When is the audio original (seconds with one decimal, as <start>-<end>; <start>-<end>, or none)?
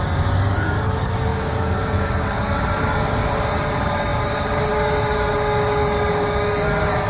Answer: none